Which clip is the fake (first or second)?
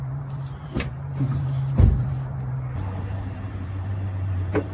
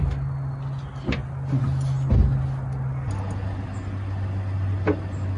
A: first